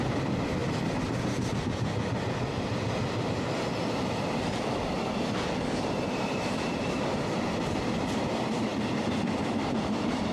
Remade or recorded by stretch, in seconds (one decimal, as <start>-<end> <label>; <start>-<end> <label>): 0.0-0.6 remade; 0.6-2.6 recorded; 2.6-8.7 remade; 8.7-9.9 recorded; 9.9-10.3 remade